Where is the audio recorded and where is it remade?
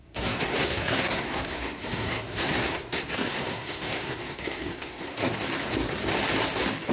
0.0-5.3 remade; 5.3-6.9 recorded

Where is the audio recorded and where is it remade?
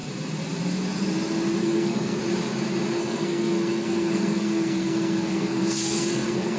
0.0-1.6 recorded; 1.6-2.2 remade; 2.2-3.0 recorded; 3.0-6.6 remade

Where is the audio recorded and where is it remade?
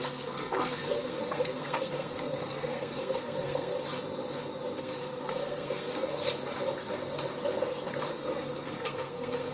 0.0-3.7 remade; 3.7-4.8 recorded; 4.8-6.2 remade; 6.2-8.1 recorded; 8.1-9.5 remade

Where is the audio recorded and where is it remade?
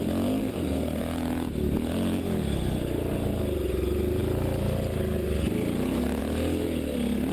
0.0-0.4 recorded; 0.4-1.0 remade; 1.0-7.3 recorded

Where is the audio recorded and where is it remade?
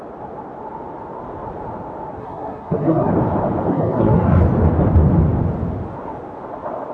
0.0-2.2 recorded; 2.2-3.1 remade; 3.1-3.7 recorded; 3.7-4.4 remade; 4.4-6.9 recorded